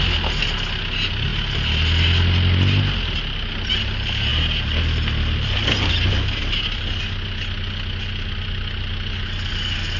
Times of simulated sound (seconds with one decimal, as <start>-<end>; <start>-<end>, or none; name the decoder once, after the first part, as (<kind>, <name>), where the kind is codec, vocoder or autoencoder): none